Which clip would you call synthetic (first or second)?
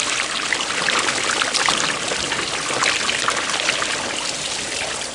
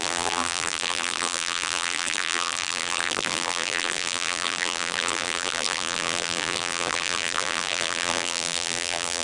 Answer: second